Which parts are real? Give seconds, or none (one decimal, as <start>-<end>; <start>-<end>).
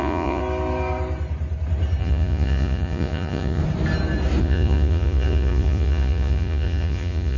0.4-2.0; 3.6-4.4